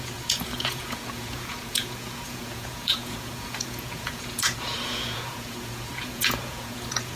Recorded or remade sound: remade